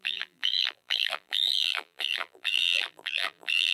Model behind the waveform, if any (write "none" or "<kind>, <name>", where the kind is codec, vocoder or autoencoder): vocoder, BigVGAN v2